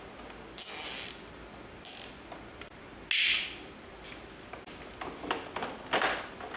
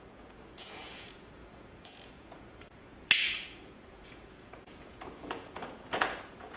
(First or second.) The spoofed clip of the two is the second